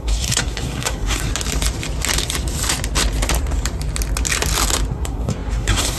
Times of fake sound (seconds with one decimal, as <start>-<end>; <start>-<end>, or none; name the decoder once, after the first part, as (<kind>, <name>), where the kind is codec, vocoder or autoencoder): 0.0-1.3 (codec, SNAC); 4.9-6.0